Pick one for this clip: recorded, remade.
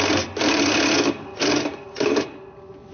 recorded